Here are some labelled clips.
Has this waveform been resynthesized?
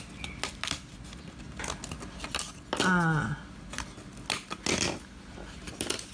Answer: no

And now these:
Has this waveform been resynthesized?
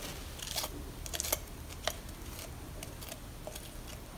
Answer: no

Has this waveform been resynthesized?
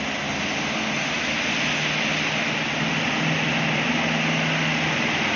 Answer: no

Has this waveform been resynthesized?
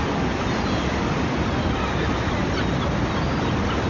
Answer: no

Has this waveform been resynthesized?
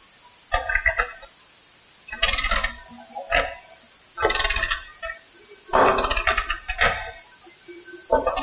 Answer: no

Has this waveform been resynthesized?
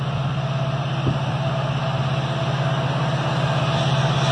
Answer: no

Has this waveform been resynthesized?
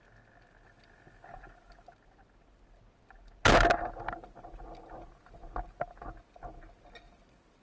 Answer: no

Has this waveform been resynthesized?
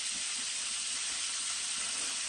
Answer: no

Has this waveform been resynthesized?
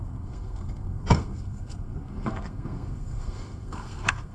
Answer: yes